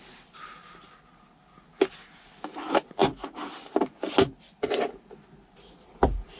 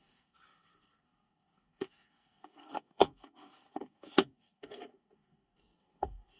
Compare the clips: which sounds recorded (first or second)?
first